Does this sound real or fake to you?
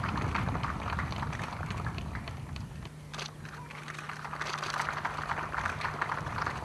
fake